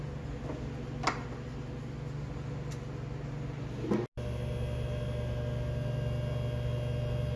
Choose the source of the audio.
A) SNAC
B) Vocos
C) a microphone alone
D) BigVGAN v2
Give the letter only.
C